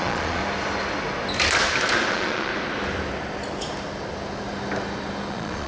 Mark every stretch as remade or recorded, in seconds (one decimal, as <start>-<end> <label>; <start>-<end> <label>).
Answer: 0.0-0.4 remade; 0.4-2.1 recorded; 2.1-2.5 remade; 2.5-5.3 recorded; 5.3-5.7 remade